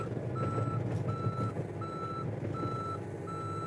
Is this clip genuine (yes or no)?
yes